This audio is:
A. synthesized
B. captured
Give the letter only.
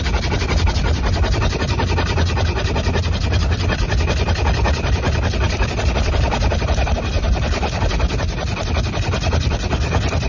B